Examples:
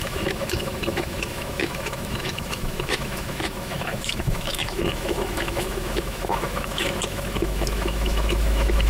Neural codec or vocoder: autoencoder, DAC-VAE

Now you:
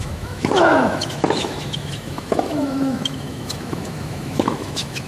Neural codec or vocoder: autoencoder, DAC-VAE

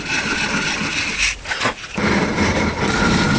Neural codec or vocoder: none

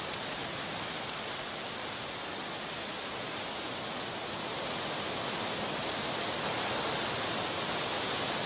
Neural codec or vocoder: none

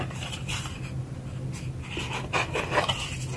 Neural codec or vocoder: none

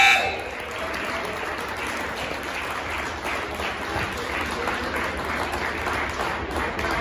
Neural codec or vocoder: none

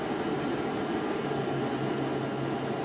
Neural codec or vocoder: none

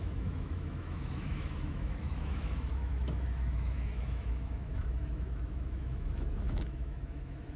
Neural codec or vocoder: autoencoder, DAC-VAE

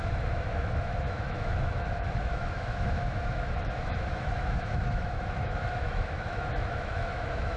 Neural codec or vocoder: autoencoder, DAC-VAE